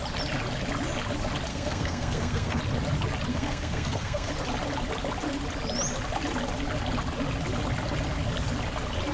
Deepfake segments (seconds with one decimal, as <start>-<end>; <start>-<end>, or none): 1.5-2.6; 3.3-4.3